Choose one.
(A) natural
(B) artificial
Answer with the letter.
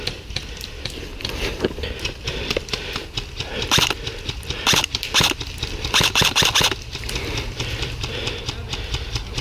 B